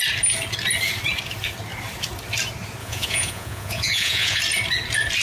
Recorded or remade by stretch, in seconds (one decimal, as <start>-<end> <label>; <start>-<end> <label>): 0.0-2.8 recorded; 2.8-4.4 remade; 4.4-5.2 recorded